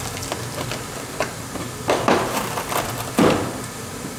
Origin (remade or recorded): recorded